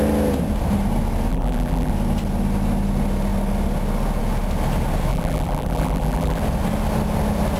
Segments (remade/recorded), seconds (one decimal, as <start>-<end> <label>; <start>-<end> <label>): 0.0-1.3 recorded; 1.3-1.9 remade; 1.9-5.1 recorded; 5.1-6.4 remade; 6.4-7.6 recorded